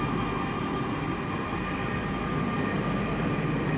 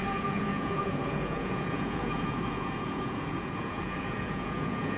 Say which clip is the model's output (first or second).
second